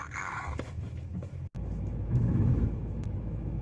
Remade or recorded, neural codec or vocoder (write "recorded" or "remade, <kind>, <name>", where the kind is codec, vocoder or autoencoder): remade, autoencoder, DAC-VAE